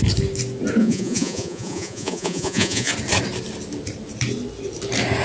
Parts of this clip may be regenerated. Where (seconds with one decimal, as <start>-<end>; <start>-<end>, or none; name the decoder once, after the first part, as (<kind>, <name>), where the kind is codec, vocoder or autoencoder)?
0.8-2.9 (vocoder, Vocos)